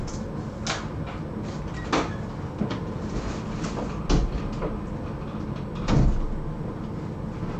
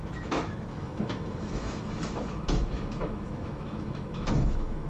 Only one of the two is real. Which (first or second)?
first